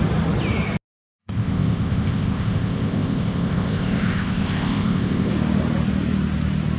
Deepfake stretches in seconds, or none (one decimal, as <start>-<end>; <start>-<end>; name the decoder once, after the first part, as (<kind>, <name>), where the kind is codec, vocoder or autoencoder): 1.2-5.3 (codec, ZipCodec)